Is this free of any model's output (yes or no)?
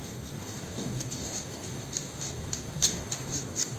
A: no